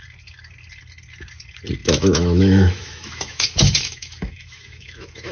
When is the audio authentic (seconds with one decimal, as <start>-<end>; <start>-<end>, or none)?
0.0-1.8